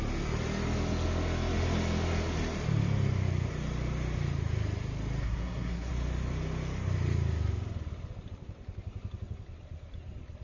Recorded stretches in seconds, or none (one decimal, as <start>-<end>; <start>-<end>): 0.0-5.2; 5.9-10.4